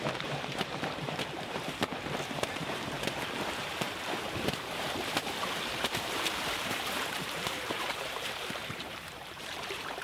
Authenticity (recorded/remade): remade